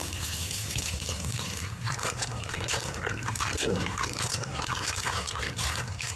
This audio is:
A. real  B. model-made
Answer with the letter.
B